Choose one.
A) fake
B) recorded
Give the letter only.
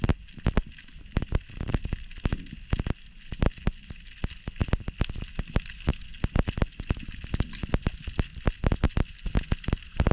B